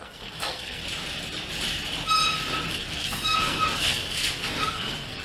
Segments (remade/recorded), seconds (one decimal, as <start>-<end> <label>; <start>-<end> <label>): 0.0-0.8 remade; 0.8-2.7 recorded; 2.7-5.2 remade